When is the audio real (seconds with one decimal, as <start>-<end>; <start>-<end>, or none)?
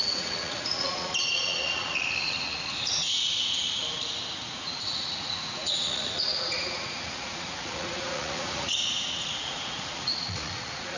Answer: 3.8-4.4